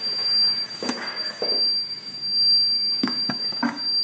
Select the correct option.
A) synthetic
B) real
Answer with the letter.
A